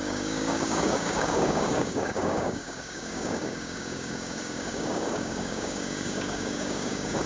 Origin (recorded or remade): remade